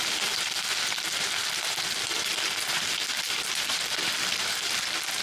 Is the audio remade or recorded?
recorded